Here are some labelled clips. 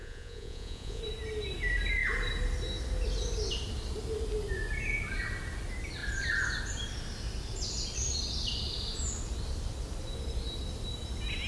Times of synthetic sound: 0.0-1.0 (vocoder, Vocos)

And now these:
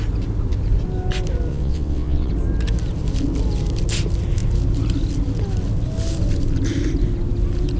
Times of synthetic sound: 1.5-2.3 (vocoder, WaveNeXt)

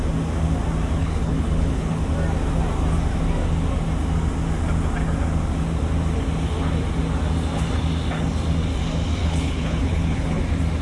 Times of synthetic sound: 1.0-2.0 (codec, HILCodec); 9.2-10.4

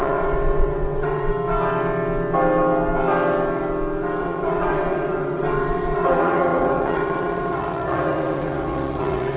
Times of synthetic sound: 0.0-1.3 (vocoder, WaveNeXt); 4.2-9.4